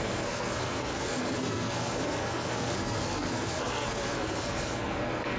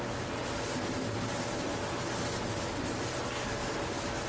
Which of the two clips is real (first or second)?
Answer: second